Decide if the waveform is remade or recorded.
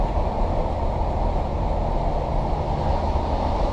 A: recorded